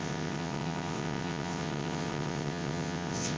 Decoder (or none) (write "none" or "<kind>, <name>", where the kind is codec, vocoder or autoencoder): vocoder, WaveNeXt